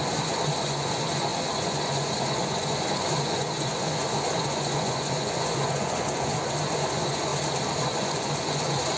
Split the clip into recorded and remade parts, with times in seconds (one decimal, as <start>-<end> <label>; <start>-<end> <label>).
0.0-7.3 remade; 7.3-7.8 recorded; 7.8-9.0 remade